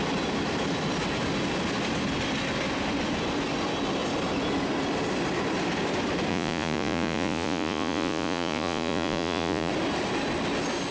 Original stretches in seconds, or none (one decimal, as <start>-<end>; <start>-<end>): 0.0-6.3; 9.7-10.9